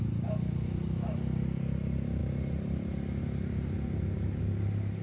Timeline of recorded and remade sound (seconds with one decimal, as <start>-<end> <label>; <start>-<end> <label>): 0.0-5.0 recorded